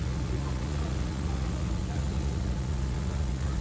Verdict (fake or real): fake